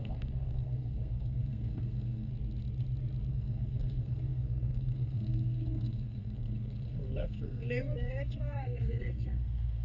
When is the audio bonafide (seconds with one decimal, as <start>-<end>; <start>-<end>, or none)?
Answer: 2.3-3.3